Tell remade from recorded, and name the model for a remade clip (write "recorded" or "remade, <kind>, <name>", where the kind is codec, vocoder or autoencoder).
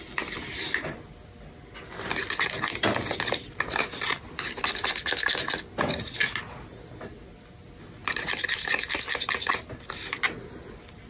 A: recorded